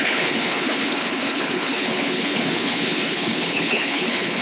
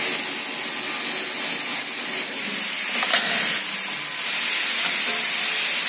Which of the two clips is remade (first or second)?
first